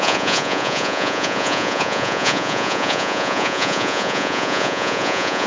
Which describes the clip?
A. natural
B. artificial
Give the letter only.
B